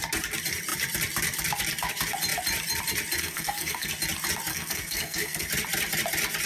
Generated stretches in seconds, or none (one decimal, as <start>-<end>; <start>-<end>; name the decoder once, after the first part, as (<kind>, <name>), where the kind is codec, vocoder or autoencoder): 3.2-3.9 (codec, SNAC); 4.5-5.5